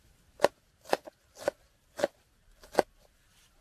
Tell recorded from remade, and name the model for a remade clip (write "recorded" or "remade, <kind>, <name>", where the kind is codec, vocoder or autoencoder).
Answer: recorded